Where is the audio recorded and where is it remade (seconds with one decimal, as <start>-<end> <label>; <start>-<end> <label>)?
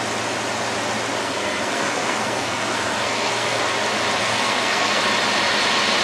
0.0-1.2 recorded; 1.2-3.6 remade; 3.6-4.2 recorded; 4.2-5.0 remade; 5.0-6.0 recorded